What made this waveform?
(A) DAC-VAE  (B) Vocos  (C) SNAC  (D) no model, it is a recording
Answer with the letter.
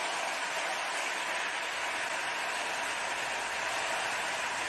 D